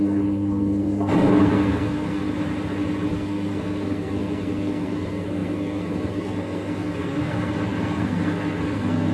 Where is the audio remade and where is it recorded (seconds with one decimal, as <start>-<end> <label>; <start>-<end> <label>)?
0.0-2.2 remade; 2.2-3.1 recorded; 3.1-9.1 remade